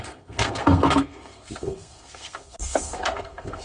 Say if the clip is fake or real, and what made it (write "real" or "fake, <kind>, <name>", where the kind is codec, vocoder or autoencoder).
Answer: fake, codec, SNAC